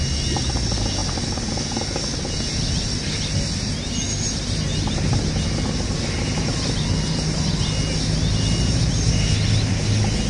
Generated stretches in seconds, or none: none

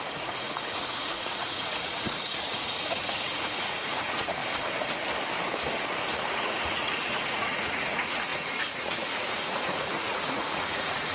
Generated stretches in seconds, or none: 0.0-4.4; 6.3-11.1

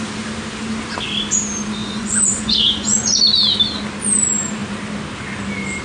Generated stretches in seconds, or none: 1.8-3.2

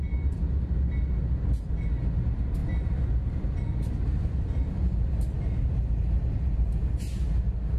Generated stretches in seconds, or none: none

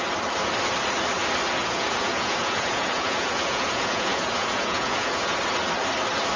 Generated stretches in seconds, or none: 1.6-5.4